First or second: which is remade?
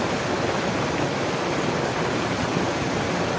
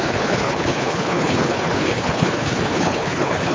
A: second